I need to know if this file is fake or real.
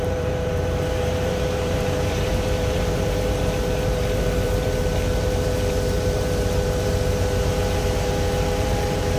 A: fake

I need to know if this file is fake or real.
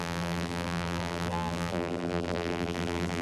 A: fake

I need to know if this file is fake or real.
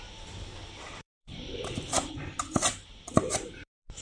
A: fake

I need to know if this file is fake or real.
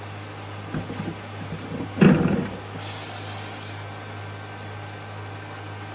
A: real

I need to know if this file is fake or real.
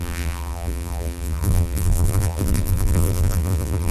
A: fake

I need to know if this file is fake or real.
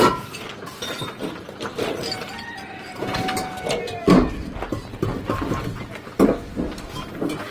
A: real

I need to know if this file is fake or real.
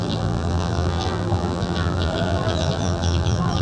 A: fake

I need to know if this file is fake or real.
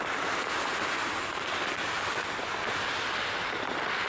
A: real